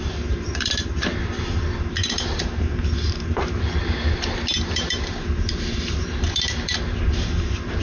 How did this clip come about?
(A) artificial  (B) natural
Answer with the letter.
A